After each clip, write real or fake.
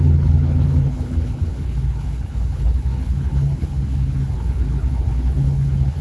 fake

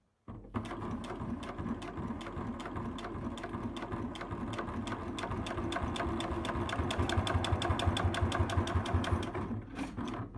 real